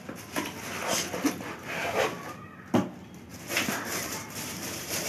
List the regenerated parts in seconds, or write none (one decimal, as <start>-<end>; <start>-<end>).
3.3-5.1